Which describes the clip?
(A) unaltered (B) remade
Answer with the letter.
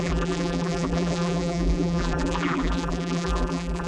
B